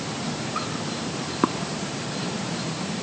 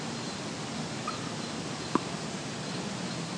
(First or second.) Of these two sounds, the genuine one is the second